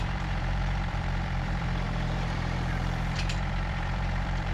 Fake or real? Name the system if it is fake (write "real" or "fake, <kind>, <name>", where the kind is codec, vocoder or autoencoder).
fake, vocoder, BigVGAN v2